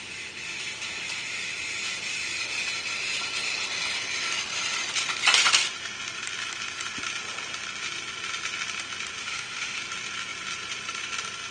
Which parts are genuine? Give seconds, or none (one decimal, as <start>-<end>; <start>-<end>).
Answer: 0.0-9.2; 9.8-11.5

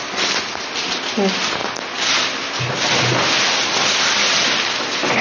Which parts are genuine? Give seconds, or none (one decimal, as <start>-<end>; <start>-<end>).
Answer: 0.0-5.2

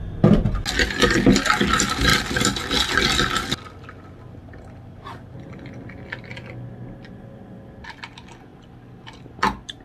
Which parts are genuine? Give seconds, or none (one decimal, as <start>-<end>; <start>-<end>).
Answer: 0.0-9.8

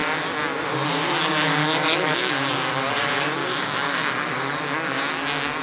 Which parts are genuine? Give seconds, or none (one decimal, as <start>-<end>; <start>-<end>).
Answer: 0.0-1.6; 2.3-3.4; 4.3-5.6

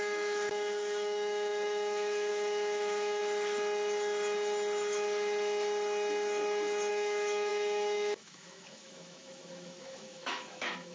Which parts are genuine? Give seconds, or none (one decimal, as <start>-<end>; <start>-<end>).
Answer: 3.2-6.9

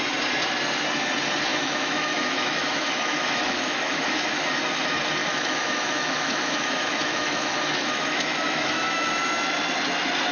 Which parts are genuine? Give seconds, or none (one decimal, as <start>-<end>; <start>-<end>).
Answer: 0.0-1.5; 4.5-5.2; 9.1-10.3

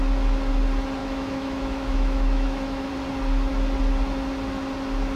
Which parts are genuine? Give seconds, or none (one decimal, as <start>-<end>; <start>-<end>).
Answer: 0.0-1.0; 2.9-5.2